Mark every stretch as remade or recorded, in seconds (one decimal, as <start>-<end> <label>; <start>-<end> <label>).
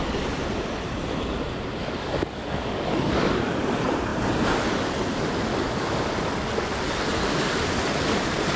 0.0-1.8 recorded; 1.8-3.6 remade; 3.6-5.5 recorded; 5.5-6.0 remade; 6.0-8.6 recorded